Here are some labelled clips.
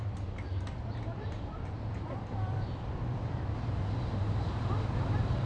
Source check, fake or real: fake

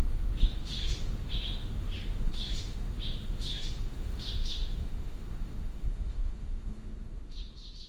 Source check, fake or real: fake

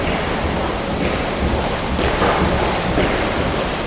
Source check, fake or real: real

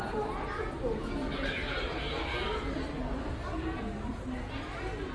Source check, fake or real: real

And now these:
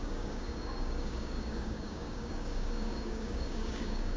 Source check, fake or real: fake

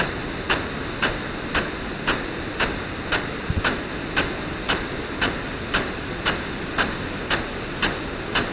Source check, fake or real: real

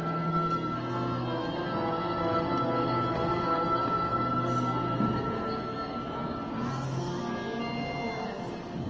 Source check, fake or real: real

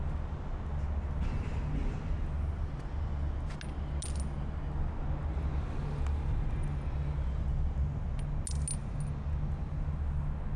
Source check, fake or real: real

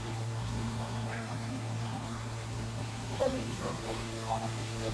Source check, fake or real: fake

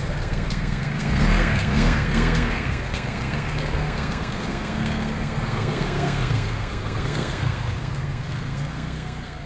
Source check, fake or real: fake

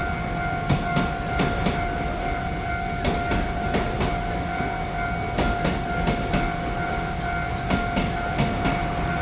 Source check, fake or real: real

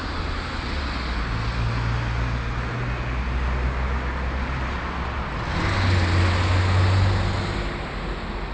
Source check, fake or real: real